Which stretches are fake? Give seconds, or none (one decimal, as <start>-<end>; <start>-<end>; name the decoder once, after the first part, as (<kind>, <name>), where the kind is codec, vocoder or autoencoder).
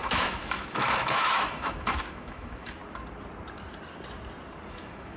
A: 0.0-2.8 (autoencoder, DAC-VAE); 4.7-5.2